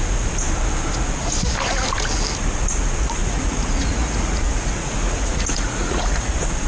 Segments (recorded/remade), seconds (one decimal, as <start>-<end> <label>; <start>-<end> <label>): 0.0-3.2 recorded; 3.2-6.3 remade; 6.3-6.7 recorded

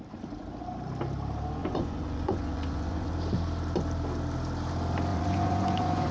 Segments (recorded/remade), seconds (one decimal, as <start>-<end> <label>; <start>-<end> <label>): 0.0-1.6 recorded; 1.6-3.1 remade; 3.1-5.1 recorded; 5.1-6.1 remade

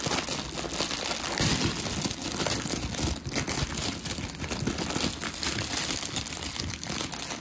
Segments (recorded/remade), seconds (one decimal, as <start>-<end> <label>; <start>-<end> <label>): 0.0-7.4 recorded

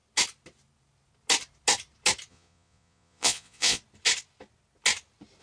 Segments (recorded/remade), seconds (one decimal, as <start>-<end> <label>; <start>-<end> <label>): 0.0-2.3 recorded; 2.3-3.8 remade; 3.8-5.4 recorded

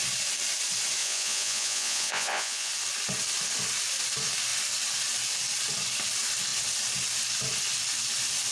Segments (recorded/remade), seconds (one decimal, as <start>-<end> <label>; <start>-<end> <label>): 0.0-1.0 recorded; 1.0-2.7 remade; 2.7-8.5 recorded